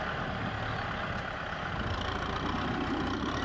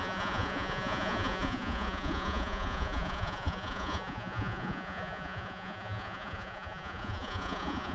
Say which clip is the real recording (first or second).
first